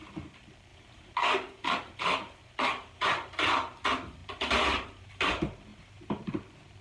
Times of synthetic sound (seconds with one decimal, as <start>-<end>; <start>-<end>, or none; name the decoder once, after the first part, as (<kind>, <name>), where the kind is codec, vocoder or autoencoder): 0.7-3.5 (vocoder, BigVGAN v2); 4.2-5.3; 5.7-6.3